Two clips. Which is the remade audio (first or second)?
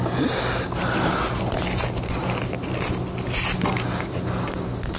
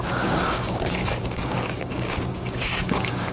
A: second